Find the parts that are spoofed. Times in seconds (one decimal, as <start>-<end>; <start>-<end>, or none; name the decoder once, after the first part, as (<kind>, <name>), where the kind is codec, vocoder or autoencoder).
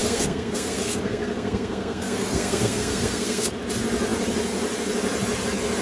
0.0-3.5 (codec, SNAC)